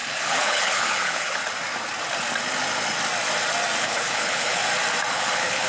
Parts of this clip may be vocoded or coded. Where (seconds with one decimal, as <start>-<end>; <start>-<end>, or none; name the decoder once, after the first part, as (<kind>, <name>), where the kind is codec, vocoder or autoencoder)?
0.0-1.4 (codec, HILCodec); 3.8-4.6; 5.1-5.7